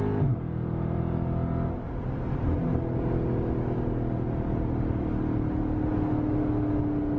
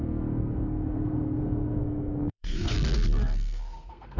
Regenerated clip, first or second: second